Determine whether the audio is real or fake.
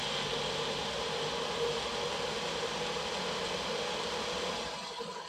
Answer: real